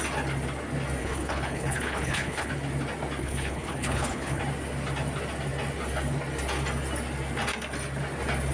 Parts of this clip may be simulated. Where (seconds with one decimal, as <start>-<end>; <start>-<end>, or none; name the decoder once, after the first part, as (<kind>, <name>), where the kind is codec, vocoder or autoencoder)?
1.0-2.5 (codec, HILCodec); 3.2-4.4